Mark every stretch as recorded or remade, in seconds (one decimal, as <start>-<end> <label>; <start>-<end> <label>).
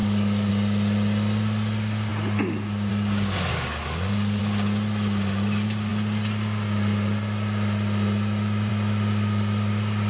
0.0-0.5 remade; 0.5-3.5 recorded; 3.5-4.4 remade; 4.4-10.1 recorded